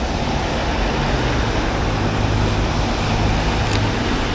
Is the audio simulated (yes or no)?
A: no